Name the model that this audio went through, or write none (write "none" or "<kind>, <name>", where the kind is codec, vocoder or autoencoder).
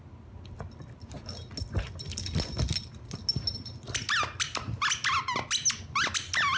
none